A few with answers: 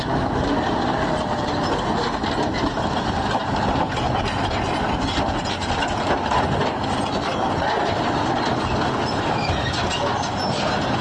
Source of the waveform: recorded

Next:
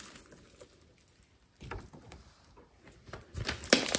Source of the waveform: recorded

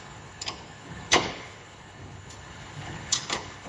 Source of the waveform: remade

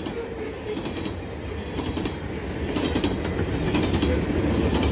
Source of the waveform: recorded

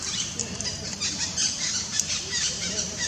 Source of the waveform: remade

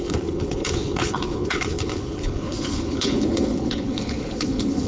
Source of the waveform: remade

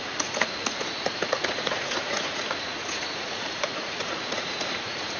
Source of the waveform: remade